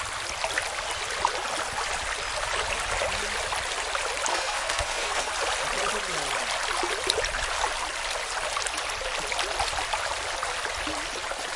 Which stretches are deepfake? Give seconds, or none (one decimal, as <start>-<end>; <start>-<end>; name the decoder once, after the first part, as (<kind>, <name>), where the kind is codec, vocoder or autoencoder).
4.3-5.3 (codec, SNAC)